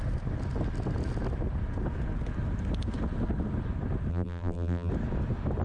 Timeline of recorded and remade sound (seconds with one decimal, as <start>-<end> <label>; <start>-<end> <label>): 0.0-4.1 recorded; 4.1-4.9 remade; 4.9-5.6 recorded